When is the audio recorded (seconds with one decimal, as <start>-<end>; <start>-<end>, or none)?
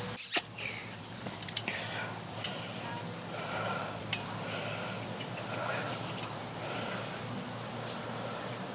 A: 0.0-0.8; 4.1-8.7